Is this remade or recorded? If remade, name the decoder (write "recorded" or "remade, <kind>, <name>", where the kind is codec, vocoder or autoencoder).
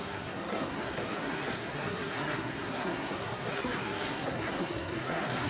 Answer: remade, codec, SNAC